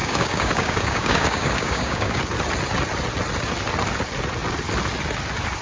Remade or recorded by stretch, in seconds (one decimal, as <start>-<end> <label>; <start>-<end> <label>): 0.0-2.2 remade; 2.2-5.6 recorded